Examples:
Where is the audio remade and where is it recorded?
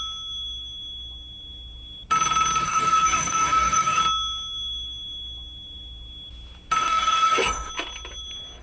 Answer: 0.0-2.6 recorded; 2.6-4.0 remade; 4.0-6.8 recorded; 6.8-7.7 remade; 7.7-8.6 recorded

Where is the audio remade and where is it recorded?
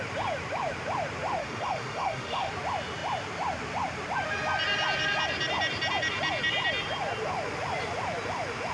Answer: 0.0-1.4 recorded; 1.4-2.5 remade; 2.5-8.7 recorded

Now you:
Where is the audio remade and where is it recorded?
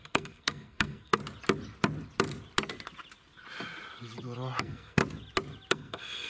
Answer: 0.0-1.2 remade; 1.2-4.6 recorded; 4.6-5.0 remade; 5.0-5.7 recorded; 5.7-6.3 remade